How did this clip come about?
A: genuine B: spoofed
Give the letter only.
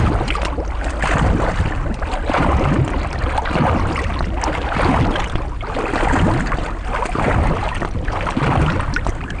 A